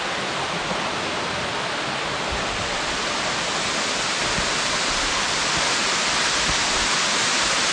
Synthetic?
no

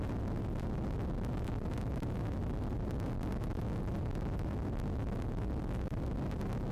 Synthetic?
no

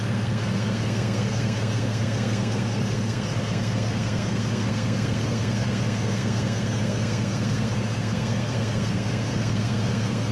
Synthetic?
yes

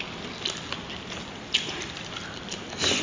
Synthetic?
no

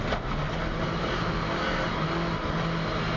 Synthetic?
no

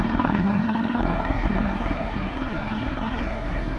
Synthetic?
yes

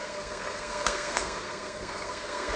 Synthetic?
yes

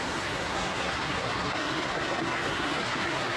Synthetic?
yes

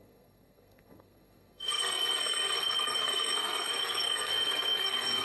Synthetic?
yes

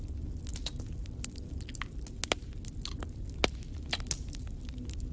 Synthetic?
no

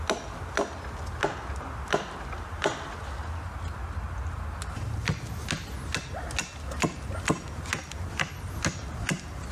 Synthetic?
no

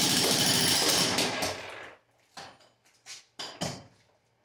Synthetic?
no